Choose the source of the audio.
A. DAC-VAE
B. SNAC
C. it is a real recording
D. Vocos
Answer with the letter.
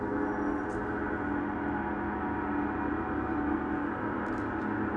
C